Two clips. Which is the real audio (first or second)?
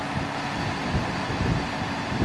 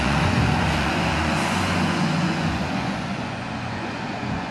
first